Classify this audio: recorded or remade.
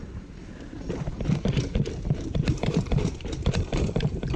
remade